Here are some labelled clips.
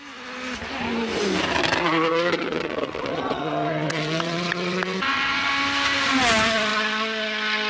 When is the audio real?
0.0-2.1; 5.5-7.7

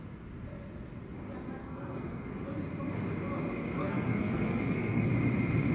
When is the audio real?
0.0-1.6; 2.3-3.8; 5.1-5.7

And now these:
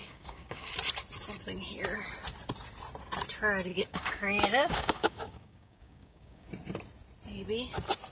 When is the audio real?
0.7-3.7; 6.5-8.1